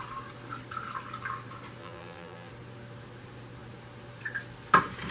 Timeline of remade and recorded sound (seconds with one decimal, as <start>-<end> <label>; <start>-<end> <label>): 0.0-1.8 recorded; 1.8-2.5 remade; 2.5-5.1 recorded